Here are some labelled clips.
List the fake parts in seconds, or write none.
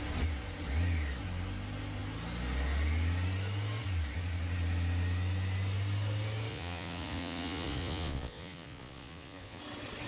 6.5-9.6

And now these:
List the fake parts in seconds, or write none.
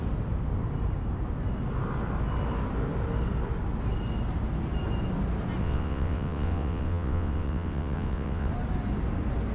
5.6-8.5